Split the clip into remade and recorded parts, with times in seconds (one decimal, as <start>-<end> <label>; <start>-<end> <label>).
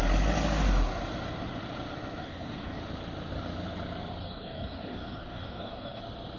0.0-2.2 recorded; 2.2-2.8 remade; 2.8-4.2 recorded; 4.2-6.0 remade; 6.0-6.4 recorded